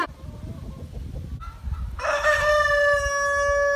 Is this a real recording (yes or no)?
yes